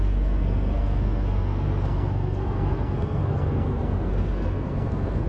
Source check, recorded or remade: remade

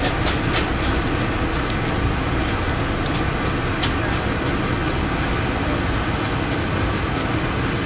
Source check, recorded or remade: recorded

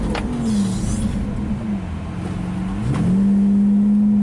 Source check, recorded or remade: recorded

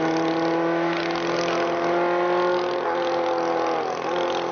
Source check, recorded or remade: recorded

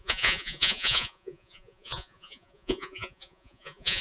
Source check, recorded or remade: remade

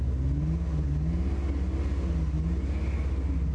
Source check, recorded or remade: recorded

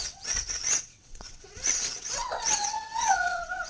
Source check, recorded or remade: remade